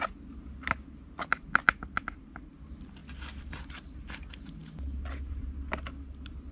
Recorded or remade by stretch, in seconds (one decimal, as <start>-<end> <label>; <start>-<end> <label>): 0.0-6.5 recorded